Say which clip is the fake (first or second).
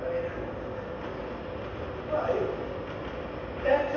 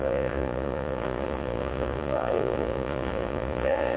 second